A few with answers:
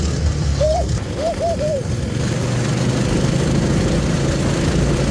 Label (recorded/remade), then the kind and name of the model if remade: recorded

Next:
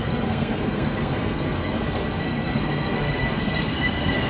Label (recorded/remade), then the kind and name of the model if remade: remade, codec, SNAC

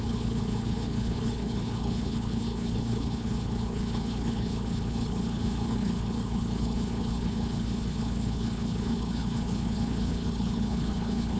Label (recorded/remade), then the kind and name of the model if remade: remade, codec, HILCodec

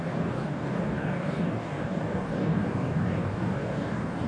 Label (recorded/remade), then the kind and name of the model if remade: remade, codec, DAC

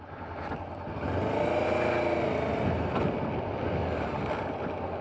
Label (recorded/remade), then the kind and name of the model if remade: recorded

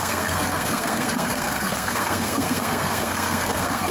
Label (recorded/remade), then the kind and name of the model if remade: remade, codec, SNAC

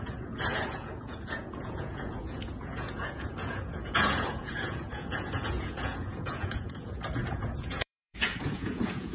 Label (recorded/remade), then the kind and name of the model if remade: remade, vocoder, Vocos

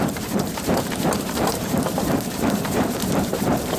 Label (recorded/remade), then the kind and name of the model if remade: remade, vocoder, BigVGAN v2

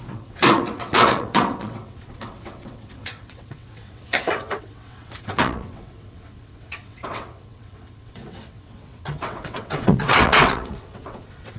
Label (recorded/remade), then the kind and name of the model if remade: remade, vocoder, WaveNeXt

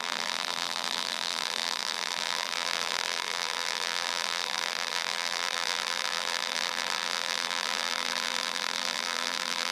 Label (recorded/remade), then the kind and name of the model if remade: remade, vocoder, BigVGAN v2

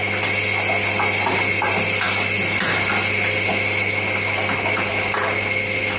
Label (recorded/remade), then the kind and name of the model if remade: recorded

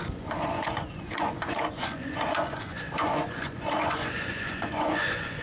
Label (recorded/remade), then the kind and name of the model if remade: remade, vocoder, Vocos